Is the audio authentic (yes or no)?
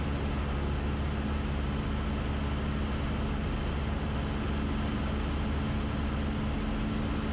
yes